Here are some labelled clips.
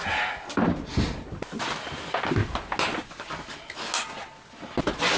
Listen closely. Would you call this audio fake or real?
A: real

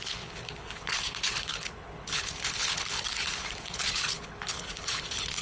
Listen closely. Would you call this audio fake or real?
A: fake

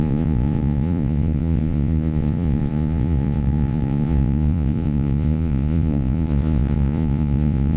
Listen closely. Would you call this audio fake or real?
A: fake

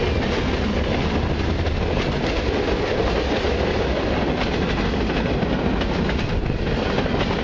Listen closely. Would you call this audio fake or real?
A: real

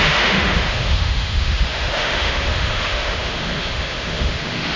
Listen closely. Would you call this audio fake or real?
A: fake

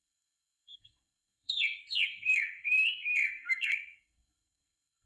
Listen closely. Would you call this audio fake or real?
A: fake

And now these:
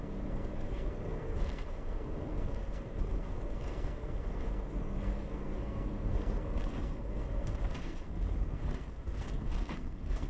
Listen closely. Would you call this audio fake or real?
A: fake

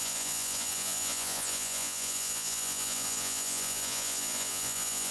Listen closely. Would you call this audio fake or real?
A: fake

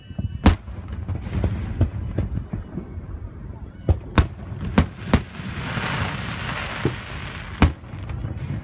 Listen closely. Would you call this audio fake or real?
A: real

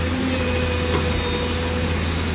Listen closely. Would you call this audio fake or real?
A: real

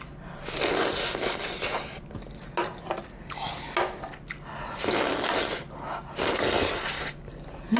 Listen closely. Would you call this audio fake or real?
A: real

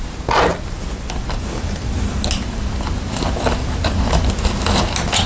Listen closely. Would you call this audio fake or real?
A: real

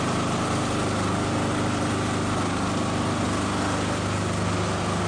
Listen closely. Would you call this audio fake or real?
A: real